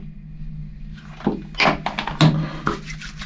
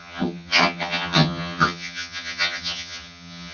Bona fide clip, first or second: first